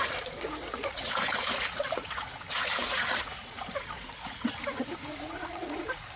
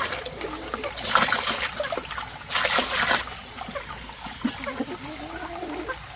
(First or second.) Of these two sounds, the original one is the second